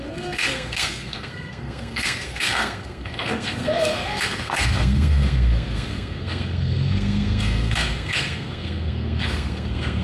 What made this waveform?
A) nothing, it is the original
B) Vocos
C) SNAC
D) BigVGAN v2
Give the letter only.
C